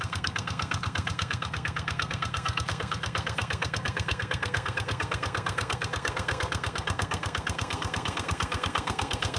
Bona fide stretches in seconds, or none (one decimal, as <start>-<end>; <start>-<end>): none